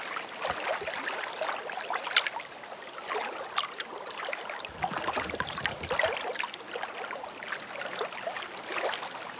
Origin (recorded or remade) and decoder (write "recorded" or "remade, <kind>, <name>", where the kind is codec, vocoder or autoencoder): recorded